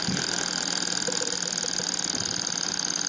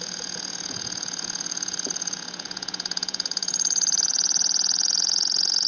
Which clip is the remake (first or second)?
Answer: second